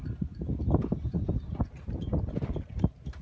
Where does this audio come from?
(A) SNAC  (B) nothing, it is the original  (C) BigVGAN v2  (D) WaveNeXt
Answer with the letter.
B